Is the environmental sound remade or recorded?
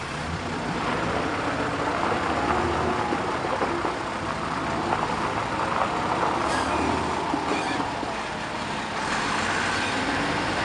remade